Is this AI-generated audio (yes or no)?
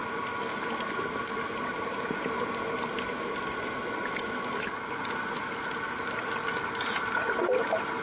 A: no